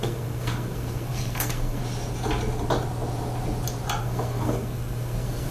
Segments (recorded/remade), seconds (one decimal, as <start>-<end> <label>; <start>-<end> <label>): 0.0-1.8 remade; 1.8-4.0 recorded; 4.0-5.5 remade